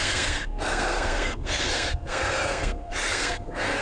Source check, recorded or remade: remade